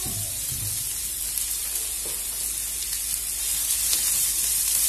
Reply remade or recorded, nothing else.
recorded